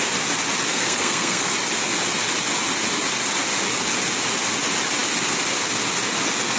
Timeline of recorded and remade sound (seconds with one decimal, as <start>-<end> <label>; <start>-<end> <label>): 0.0-0.7 recorded; 0.7-1.5 remade; 1.5-6.6 recorded